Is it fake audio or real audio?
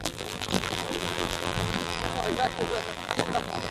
fake